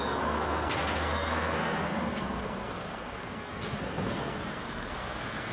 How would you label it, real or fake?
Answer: fake